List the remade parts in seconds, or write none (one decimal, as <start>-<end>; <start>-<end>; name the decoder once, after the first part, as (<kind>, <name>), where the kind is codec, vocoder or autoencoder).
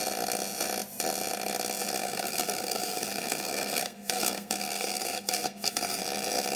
2.0-6.0 (codec, SNAC)